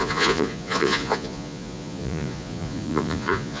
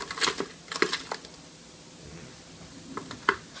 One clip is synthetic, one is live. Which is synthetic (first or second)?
first